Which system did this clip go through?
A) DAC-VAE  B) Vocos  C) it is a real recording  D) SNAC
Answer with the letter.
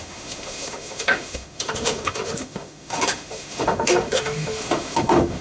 A